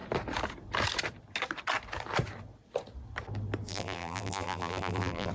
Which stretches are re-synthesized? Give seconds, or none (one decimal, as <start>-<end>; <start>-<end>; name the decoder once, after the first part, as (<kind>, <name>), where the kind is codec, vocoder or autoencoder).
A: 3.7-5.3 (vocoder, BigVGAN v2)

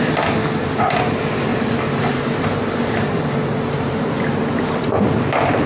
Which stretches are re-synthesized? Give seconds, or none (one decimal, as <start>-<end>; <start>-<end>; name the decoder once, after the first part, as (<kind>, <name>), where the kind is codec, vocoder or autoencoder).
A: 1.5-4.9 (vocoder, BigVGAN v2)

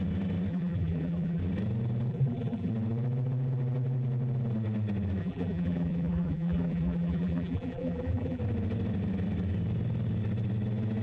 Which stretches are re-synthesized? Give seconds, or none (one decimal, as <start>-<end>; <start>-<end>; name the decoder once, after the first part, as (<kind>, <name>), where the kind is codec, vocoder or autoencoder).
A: 0.5-1.4 (vocoder, BigVGAN v2); 2.1-2.7; 5.2-8.4

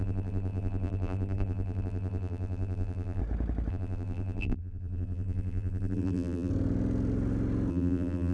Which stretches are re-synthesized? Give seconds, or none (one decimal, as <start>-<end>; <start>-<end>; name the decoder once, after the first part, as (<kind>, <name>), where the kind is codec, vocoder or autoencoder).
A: 0.0-3.2 (vocoder, BigVGAN v2); 3.7-6.5; 7.7-8.3